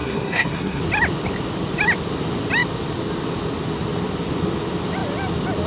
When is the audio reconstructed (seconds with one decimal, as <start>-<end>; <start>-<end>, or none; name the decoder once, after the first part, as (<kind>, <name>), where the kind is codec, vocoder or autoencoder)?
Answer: 0.0-0.8 (codec, SNAC)